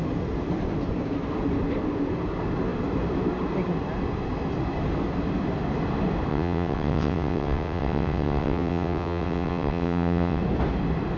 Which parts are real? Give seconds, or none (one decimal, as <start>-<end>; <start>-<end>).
0.0-6.3; 10.4-11.2

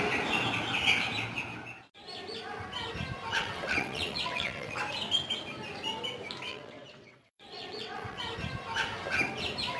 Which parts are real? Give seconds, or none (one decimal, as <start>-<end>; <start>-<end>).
0.0-3.3; 4.8-6.5; 8.2-9.8

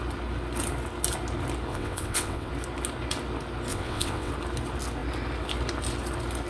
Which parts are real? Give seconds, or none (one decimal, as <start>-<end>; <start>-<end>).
0.0-1.7; 2.5-3.7; 4.3-6.5

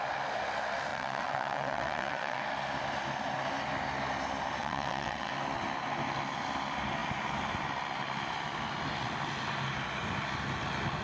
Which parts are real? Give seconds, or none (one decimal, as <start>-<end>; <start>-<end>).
0.0-0.9; 2.4-4.6; 5.3-11.0